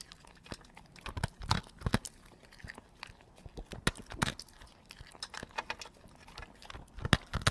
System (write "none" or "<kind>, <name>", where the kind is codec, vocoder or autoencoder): none